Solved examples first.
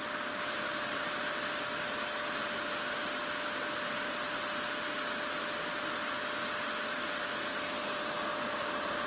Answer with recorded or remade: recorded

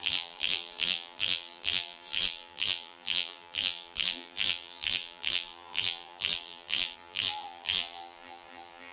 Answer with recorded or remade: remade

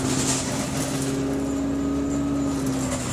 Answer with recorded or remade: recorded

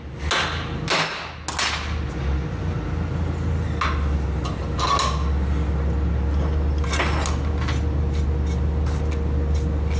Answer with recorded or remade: recorded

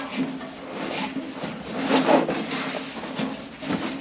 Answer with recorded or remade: recorded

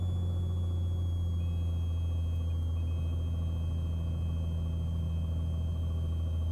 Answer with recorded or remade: recorded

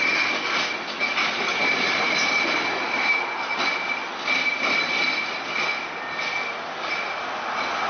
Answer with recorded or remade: recorded